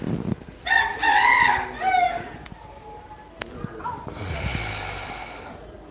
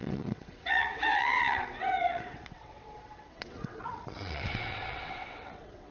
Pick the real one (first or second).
first